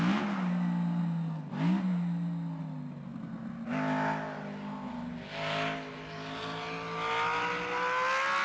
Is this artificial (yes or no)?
no